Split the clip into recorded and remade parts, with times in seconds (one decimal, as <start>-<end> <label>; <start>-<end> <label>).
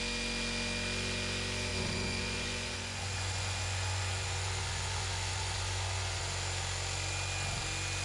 0.0-1.7 recorded; 1.7-6.2 remade; 6.2-8.0 recorded